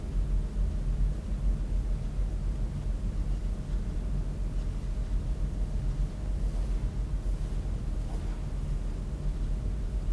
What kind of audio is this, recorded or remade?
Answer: recorded